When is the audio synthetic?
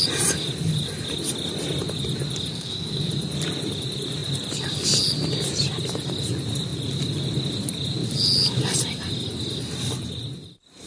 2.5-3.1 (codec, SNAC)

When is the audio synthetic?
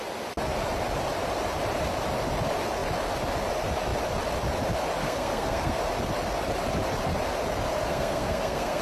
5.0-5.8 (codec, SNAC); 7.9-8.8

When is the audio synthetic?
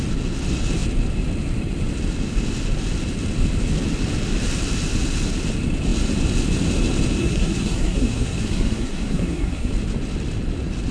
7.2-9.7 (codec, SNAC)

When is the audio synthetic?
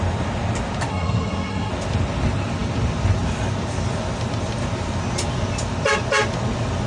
0.9-1.7 (codec, SNAC)